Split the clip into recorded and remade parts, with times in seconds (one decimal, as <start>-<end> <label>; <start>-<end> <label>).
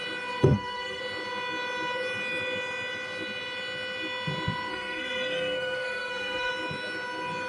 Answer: 0.0-0.4 recorded; 0.4-1.0 remade; 1.0-4.7 recorded; 4.7-6.5 remade; 6.5-7.5 recorded